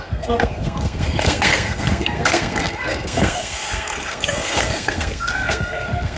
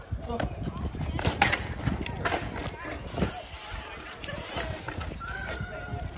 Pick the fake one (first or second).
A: first